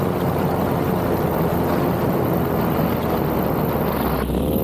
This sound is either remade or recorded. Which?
recorded